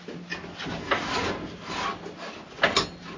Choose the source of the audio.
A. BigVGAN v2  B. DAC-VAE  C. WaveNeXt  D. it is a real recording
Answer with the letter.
D